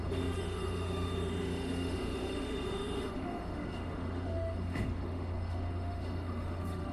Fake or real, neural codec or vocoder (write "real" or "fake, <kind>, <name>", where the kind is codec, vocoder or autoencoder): fake, autoencoder, DAC-VAE